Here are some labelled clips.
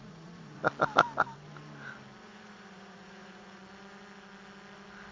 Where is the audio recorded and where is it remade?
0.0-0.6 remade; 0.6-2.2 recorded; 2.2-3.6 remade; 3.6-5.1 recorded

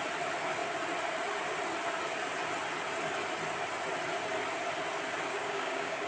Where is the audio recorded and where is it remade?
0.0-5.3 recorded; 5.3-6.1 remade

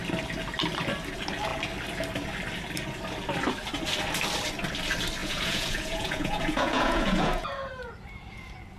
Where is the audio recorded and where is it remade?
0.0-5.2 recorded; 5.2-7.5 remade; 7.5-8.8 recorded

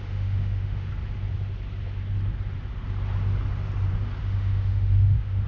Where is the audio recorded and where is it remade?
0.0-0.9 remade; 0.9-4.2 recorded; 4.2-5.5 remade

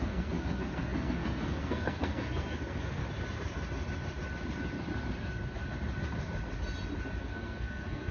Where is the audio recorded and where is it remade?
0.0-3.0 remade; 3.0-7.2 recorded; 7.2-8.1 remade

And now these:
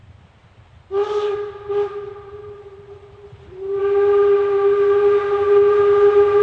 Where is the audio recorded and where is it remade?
0.0-6.4 recorded